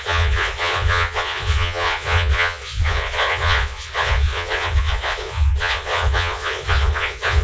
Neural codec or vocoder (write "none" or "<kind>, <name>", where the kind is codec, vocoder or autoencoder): vocoder, Vocos